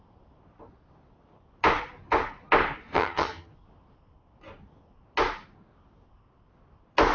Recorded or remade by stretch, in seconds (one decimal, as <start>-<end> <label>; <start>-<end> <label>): 0.0-2.9 recorded; 2.9-3.5 remade; 3.5-7.1 recorded